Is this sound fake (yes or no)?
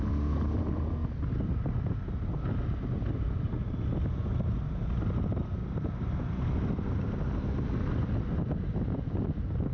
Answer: no